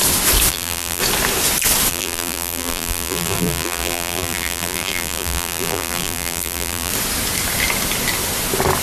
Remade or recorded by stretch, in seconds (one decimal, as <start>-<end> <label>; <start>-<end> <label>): 0.0-0.5 recorded; 0.5-1.0 remade; 1.0-1.9 recorded; 1.9-6.9 remade; 6.9-8.8 recorded